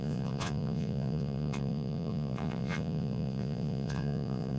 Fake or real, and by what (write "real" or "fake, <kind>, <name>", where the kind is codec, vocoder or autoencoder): fake, vocoder, Vocos